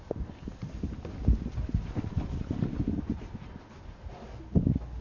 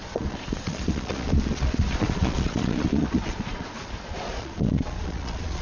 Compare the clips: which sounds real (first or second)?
first